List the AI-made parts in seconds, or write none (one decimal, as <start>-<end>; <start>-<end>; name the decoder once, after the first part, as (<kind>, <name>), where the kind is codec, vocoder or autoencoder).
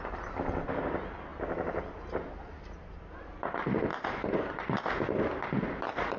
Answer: 3.9-4.8 (vocoder, BigVGAN v2)